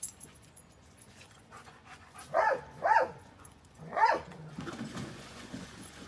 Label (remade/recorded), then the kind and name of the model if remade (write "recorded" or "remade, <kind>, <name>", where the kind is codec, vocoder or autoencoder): remade, vocoder, Vocos